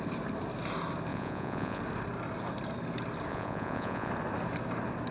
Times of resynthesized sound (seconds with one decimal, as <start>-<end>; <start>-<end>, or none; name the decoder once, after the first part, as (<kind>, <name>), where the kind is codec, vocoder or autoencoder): 1.1-1.8 (vocoder, Vocos); 3.3-4.1